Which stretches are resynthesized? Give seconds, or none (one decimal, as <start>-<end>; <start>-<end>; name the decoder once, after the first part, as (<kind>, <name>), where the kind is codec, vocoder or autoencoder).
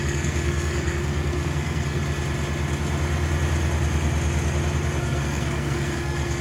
0.0-2.0 (codec, SNAC); 5.0-6.4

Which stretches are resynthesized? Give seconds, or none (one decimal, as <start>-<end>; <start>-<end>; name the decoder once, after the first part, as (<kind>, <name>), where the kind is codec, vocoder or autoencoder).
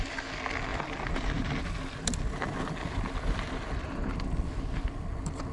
none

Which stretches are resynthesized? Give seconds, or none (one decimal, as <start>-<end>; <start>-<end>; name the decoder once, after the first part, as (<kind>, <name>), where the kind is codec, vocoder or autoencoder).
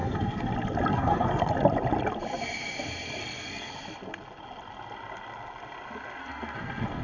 0.0-0.5 (codec, SNAC); 0.9-1.5; 3.2-3.7; 6.2-7.0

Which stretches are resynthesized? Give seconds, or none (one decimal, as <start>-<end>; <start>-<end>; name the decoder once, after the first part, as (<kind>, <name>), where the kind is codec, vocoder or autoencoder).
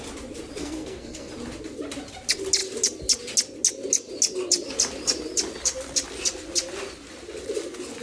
0.6-1.3 (codec, SNAC)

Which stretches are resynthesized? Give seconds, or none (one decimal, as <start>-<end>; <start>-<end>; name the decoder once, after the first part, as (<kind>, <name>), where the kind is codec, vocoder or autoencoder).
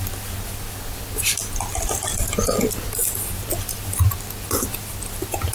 none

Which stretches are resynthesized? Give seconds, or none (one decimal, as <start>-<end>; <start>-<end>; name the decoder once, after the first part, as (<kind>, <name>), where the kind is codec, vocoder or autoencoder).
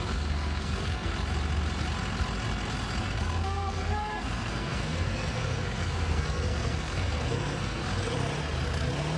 0.0-1.1 (codec, SNAC); 3.0-7.8